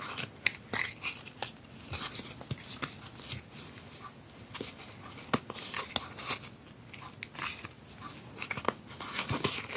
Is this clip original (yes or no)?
yes